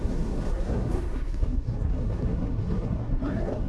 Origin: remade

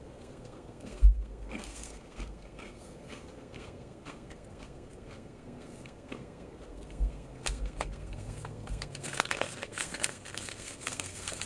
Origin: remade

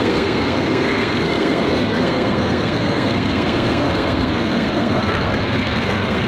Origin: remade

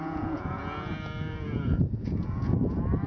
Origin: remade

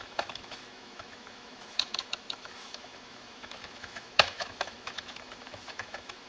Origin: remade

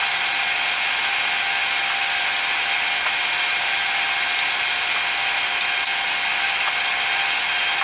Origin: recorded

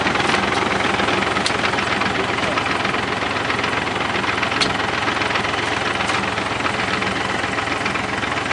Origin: recorded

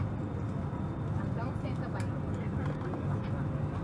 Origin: recorded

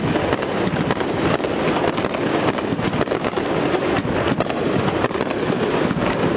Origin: recorded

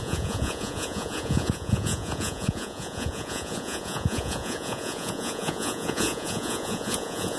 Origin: remade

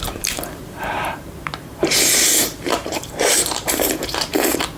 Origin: remade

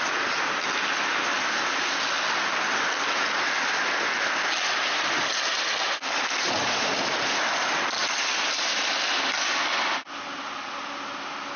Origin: recorded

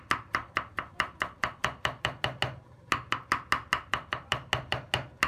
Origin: recorded